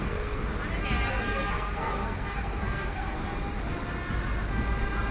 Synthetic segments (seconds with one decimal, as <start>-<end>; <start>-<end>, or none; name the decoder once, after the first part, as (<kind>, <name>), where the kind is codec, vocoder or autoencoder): 0.0-0.5 (codec, SNAC); 1.1-3.2